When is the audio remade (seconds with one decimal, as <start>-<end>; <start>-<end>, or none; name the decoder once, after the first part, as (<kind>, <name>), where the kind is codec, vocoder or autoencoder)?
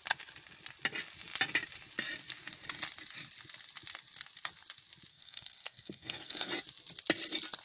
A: 5.1-6.5 (codec, SNAC)